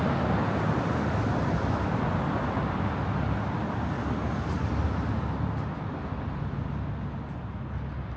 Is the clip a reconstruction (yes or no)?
no